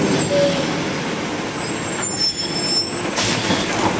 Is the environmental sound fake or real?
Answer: real